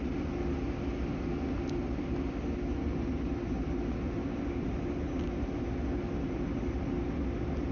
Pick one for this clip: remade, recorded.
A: recorded